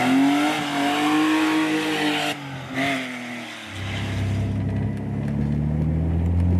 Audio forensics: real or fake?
real